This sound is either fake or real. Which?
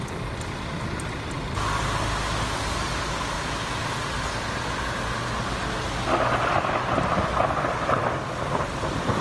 real